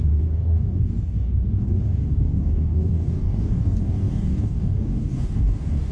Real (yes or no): no